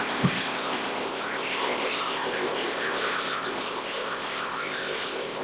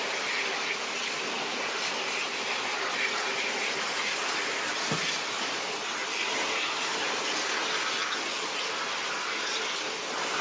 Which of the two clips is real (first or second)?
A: second